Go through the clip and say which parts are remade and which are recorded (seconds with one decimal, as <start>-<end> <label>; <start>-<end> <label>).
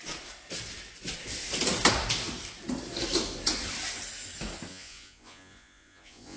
0.0-4.7 recorded; 4.7-6.4 remade